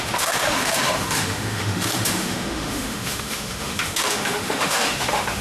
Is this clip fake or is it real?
fake